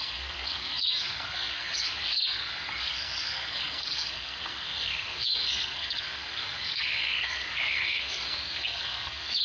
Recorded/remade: remade